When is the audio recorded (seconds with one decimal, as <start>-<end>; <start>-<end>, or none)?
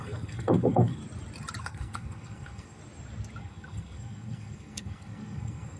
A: 1.0-1.6; 2.8-3.4